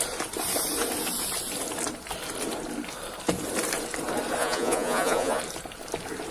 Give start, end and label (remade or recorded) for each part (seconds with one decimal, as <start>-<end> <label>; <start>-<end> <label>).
0.0-4.4 recorded; 4.4-5.4 remade; 5.4-6.3 recorded